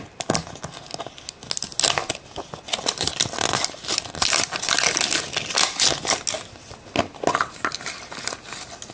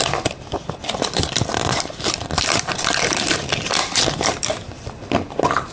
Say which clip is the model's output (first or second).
second